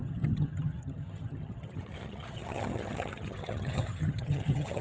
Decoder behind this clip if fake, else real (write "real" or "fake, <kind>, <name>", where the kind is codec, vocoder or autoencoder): fake, vocoder, HiFi-GAN